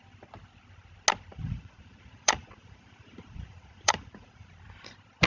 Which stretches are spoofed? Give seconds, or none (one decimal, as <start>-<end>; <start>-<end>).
1.3-4.5